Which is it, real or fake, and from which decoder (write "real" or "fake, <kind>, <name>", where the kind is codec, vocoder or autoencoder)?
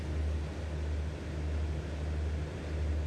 real